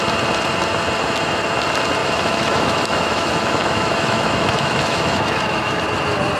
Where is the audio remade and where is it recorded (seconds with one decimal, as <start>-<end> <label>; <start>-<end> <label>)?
0.0-2.0 recorded; 2.0-5.8 remade; 5.8-6.4 recorded